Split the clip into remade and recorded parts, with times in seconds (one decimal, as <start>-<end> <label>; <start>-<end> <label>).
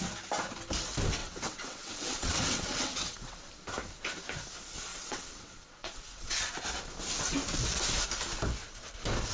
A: 0.0-1.2 recorded; 1.2-3.5 remade; 3.5-4.9 recorded; 4.9-6.6 remade; 6.6-9.3 recorded